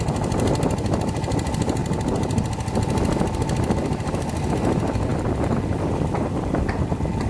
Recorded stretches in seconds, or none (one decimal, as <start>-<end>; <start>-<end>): 0.0-7.3